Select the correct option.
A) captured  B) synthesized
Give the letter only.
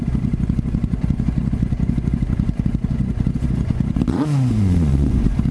B